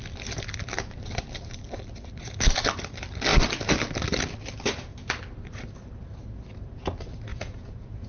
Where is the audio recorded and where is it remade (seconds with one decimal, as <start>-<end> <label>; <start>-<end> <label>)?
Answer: 0.0-7.3 recorded; 7.3-8.1 remade